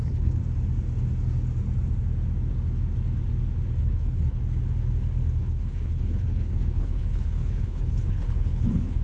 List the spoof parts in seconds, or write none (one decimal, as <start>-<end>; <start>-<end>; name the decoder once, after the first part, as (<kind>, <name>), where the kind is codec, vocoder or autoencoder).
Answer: 0.0-0.4 (codec, HILCodec); 3.8-4.4; 5.4-9.0